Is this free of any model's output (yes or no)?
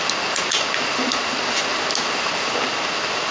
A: yes